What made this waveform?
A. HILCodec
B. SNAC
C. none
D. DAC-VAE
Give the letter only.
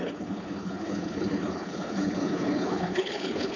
A